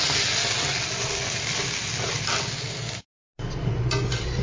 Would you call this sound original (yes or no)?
yes